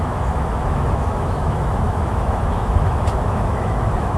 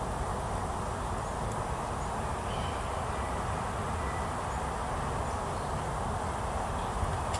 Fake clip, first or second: first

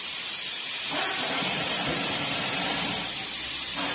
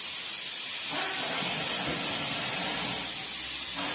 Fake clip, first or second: first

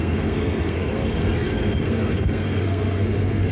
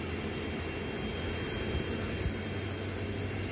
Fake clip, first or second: first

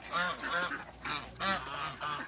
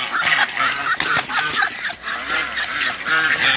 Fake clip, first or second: second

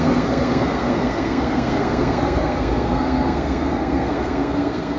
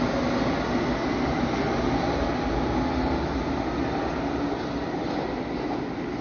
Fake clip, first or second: first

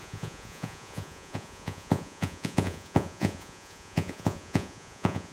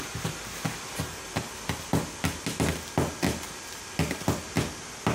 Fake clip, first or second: first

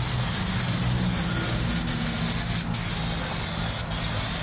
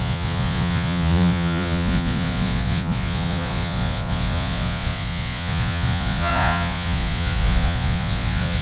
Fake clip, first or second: second